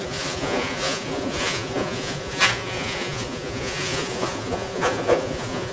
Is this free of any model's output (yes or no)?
no